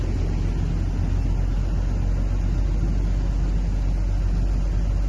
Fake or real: real